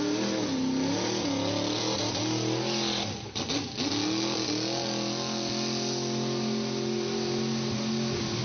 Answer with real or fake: real